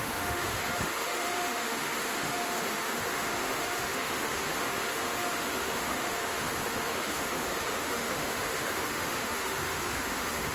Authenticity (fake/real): fake